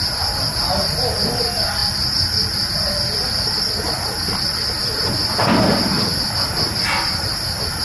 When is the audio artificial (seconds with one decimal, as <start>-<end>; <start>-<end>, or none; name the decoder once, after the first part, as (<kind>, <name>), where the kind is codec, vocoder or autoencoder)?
none